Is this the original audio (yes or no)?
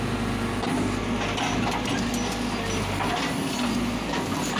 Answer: yes